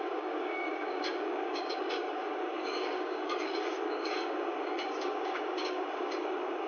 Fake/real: fake